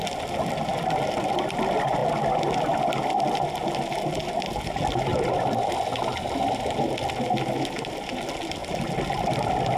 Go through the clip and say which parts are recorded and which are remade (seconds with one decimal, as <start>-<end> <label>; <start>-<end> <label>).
0.0-9.8 recorded